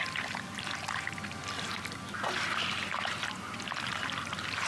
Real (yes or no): yes